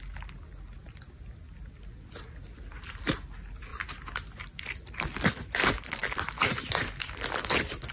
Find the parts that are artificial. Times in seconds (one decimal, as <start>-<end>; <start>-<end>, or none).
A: none